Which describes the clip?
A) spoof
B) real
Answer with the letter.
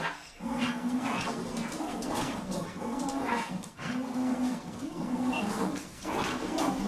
A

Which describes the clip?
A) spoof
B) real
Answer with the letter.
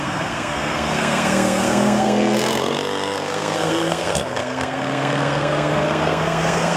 A